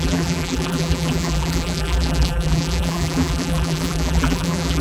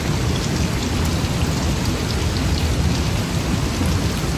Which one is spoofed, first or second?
first